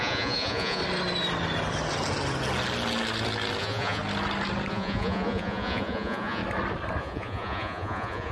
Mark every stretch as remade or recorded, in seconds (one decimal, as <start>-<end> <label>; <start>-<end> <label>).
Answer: 0.0-0.8 remade; 0.8-3.6 recorded; 3.6-4.0 remade; 4.0-4.7 recorded; 4.7-6.4 remade; 6.4-7.0 recorded; 7.0-8.3 remade